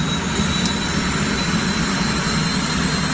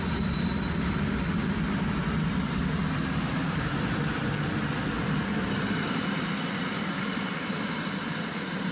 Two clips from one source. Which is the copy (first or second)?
second